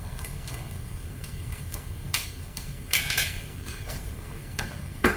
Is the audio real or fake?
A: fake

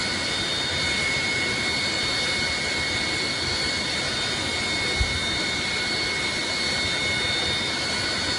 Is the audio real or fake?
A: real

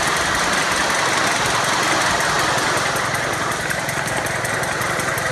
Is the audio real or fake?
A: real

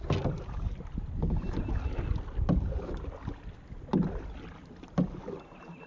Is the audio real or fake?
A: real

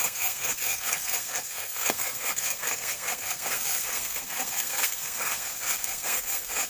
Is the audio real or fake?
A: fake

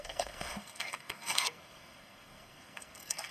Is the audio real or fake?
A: fake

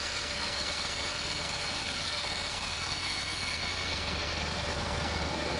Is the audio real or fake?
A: fake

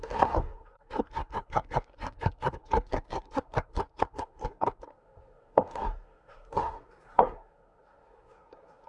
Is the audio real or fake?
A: fake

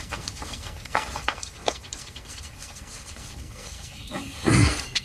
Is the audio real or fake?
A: fake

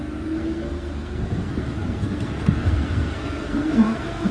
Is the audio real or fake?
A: fake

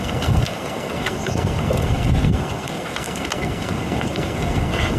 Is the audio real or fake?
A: fake